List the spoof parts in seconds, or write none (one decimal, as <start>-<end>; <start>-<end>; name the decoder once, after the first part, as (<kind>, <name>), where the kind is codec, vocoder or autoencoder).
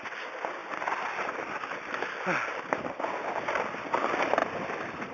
none